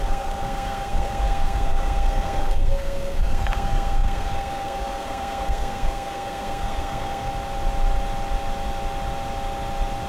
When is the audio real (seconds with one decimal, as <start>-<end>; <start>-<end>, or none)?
7.3-10.1